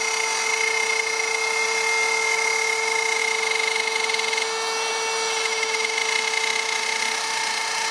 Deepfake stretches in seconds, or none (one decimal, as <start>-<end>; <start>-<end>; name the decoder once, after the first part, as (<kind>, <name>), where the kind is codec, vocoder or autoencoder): none

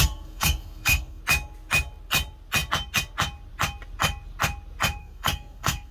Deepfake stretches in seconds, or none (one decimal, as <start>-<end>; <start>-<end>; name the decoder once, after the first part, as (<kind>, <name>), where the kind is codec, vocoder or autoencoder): 0.0-1.2 (codec, SNAC); 5.0-5.9

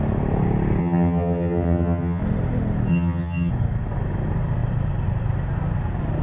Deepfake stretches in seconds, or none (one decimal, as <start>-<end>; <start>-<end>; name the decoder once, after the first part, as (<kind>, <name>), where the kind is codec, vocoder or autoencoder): 0.8-2.2 (vocoder, HiFi-GAN); 2.9-3.5